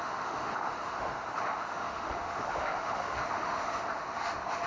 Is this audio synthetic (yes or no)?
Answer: yes